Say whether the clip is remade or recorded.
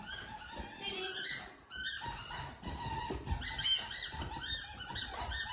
recorded